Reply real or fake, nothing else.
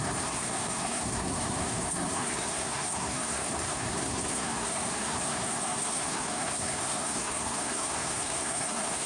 fake